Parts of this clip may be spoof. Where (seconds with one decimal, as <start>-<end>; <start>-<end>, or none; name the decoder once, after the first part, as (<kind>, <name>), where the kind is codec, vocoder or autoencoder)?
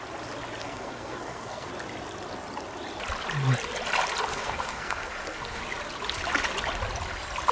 0.6-1.7 (codec, SNAC); 4.3-5.6